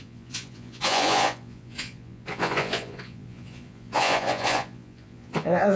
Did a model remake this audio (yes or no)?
yes